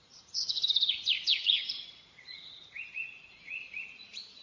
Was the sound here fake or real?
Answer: fake